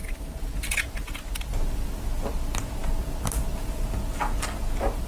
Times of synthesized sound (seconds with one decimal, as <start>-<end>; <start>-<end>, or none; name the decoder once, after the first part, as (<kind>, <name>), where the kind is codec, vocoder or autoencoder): none